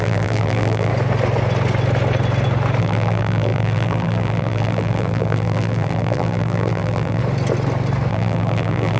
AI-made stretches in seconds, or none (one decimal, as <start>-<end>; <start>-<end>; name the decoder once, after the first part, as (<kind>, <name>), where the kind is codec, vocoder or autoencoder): 0.0-0.9 (vocoder, BigVGAN v2); 2.8-7.2; 8.1-9.0